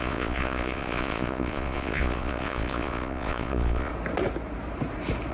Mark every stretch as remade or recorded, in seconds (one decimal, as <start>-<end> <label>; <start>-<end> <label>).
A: 0.0-3.9 remade; 3.9-5.3 recorded